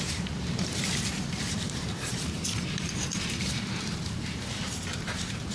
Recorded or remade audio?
remade